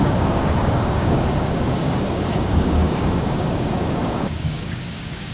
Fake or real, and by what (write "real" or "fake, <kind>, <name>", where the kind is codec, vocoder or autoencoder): fake, codec, DAC